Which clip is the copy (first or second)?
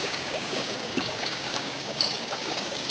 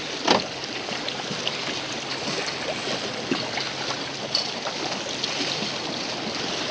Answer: first